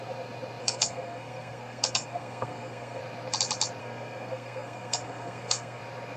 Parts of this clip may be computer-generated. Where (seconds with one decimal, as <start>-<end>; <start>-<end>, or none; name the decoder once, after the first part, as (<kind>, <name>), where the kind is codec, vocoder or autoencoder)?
0.6-3.0 (codec, SNAC); 3.8-5.8